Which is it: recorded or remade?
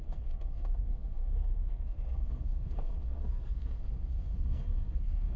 remade